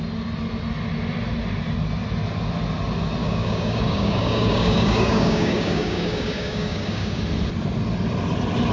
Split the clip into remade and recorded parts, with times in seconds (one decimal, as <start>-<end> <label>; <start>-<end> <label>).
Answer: 0.0-3.2 recorded; 3.2-7.2 remade; 7.2-8.7 recorded